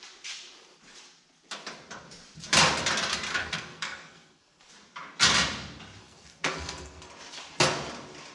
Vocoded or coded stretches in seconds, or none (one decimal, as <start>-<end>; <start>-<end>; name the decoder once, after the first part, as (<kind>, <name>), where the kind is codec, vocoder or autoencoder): 3.4-4.7 (codec, SNAC); 6.0-7.1